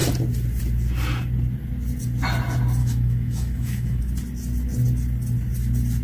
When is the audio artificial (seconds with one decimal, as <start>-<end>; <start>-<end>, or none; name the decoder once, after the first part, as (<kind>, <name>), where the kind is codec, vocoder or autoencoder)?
2.8-4.0 (autoencoder, DAC-VAE)